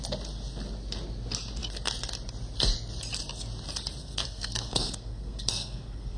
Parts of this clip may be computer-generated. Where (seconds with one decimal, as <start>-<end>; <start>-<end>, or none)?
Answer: 4.0-6.2